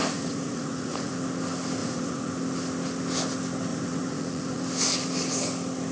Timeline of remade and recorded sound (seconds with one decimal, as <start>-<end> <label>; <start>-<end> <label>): 0.0-1.1 remade; 1.1-1.8 recorded; 1.8-2.3 remade; 2.3-3.7 recorded; 3.7-4.6 remade; 4.6-5.9 recorded